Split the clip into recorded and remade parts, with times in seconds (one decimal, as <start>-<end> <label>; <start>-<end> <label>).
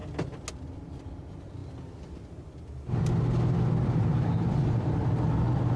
0.0-5.8 recorded